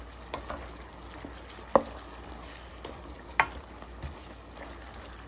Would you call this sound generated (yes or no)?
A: no